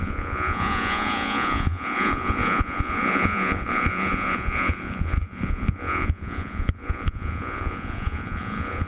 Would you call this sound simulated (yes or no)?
yes